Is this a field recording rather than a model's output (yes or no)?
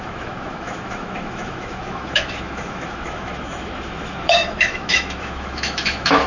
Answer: no